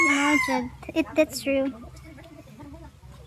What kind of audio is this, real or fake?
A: real